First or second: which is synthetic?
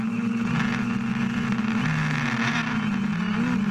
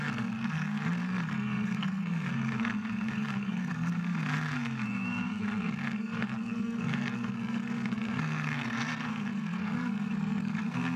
second